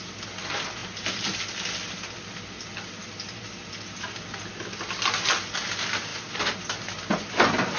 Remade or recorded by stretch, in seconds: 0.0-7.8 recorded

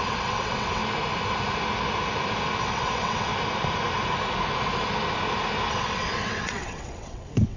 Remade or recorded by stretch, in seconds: 0.0-0.8 remade; 0.8-2.6 recorded; 2.6-3.3 remade; 3.3-5.7 recorded; 5.7-7.6 remade